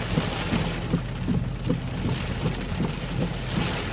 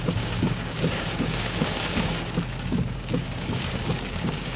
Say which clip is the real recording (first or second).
first